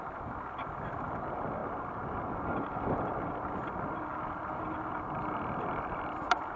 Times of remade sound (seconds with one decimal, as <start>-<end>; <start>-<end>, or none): 0.0-1.6; 3.5-4.1; 5.8-6.6